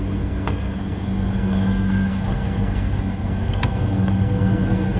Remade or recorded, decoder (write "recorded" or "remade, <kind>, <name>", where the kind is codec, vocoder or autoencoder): remade, codec, SNAC